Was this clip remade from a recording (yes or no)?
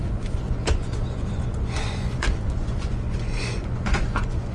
yes